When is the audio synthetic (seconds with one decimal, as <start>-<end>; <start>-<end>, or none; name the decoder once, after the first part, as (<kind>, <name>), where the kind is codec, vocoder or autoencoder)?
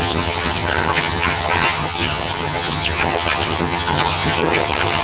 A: 0.0-5.0 (vocoder, HiFi-GAN)